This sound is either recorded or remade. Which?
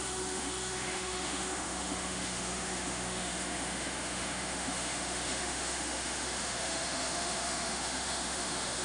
remade